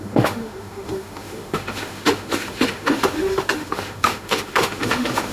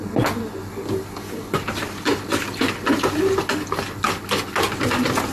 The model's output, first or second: first